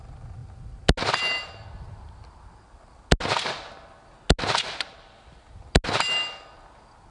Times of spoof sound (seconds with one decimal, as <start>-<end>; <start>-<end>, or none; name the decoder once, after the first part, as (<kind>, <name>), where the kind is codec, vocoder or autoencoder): none